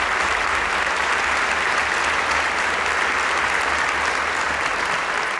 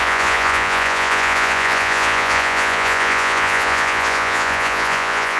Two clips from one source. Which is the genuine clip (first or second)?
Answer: first